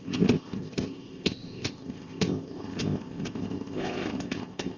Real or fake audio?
fake